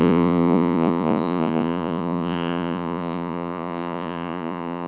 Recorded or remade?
remade